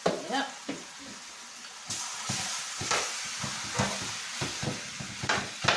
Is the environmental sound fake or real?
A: real